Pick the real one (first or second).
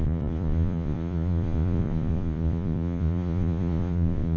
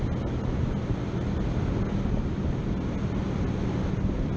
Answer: second